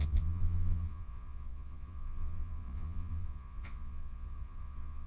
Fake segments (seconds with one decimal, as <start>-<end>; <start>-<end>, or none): 0.0-5.1